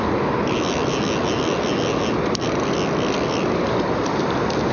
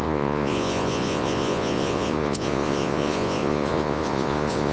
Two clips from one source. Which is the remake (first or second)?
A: second